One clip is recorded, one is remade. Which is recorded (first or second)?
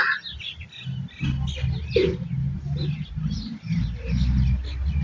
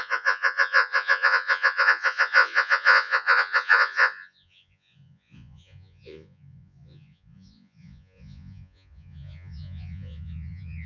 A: first